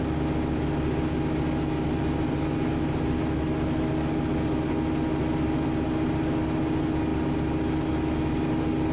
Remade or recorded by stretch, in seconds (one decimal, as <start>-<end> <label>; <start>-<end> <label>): 0.0-8.9 recorded